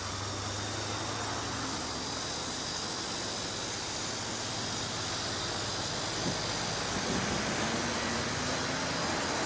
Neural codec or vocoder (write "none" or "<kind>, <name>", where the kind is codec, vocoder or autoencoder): none